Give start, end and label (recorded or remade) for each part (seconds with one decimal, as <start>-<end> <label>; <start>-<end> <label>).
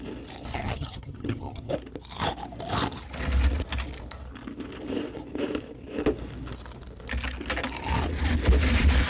0.0-0.5 recorded; 0.5-1.7 remade; 1.7-9.1 recorded